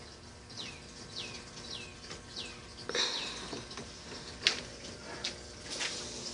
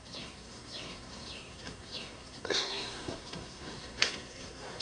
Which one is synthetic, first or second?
second